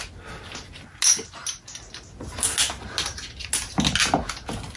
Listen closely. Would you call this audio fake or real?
real